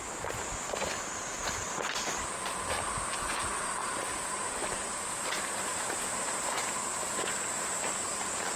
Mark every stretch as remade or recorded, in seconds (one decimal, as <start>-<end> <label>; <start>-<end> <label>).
0.0-3.8 recorded; 3.8-7.3 remade; 7.3-8.6 recorded